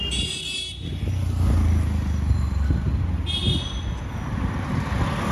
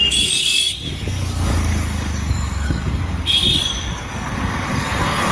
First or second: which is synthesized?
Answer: second